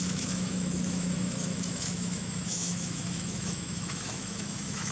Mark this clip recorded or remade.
remade